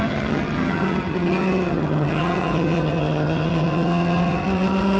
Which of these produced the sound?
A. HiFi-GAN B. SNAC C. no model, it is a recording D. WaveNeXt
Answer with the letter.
A